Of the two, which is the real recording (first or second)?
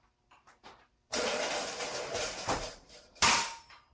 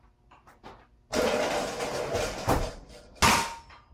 second